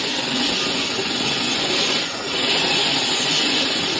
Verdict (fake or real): fake